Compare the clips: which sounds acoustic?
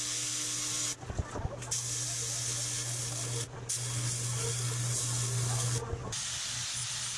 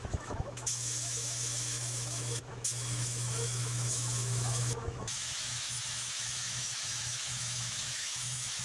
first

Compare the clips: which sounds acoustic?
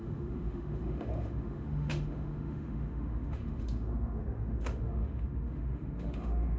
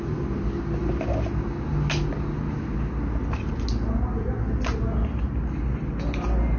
second